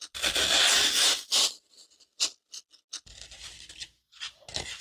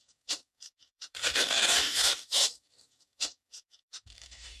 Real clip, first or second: first